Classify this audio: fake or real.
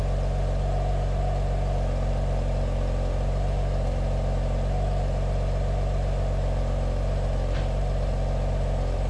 real